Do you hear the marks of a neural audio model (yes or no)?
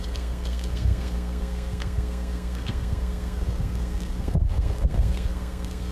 yes